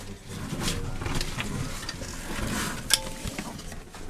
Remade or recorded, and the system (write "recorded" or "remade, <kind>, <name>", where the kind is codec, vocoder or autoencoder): recorded